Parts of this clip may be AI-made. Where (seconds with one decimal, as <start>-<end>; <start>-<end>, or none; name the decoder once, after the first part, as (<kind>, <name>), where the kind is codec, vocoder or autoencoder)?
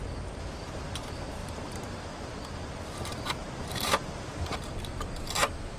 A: 1.4-2.3 (vocoder, BigVGAN v2); 3.4-4.6